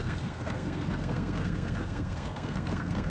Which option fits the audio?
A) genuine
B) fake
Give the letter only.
B